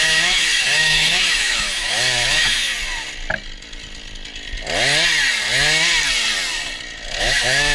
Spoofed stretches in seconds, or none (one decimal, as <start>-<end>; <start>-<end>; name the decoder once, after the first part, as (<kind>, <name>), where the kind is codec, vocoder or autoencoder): 0.0-2.7 (autoencoder, DAC-VAE); 7.2-7.7